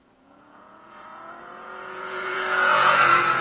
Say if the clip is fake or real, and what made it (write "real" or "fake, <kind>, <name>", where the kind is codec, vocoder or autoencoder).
fake, vocoder, Vocos